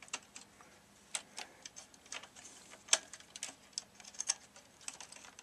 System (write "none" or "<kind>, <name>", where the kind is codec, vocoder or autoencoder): none